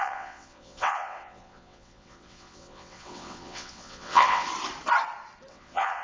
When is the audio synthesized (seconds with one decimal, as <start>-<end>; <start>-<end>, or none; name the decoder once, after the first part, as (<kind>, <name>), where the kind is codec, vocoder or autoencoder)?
0.0-4.5 (vocoder, WaveNeXt); 5.5-6.0

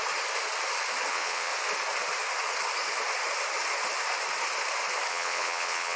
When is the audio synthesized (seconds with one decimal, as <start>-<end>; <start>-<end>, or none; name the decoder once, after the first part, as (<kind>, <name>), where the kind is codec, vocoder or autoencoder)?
1.1-1.5 (vocoder, WaveNeXt); 5.1-6.0

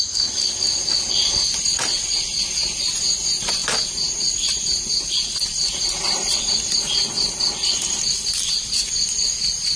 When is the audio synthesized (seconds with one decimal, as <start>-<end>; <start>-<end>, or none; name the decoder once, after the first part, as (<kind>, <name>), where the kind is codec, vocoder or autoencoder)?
none

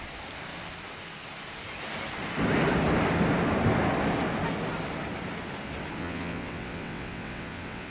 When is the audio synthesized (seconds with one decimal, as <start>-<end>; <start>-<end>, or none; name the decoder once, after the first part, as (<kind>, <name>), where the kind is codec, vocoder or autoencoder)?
6.0-7.9 (vocoder, WaveNeXt)

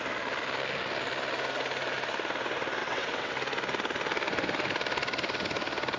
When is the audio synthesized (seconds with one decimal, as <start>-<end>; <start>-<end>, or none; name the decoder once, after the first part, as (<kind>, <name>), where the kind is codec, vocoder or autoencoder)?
2.8-3.3 (vocoder, WaveNeXt)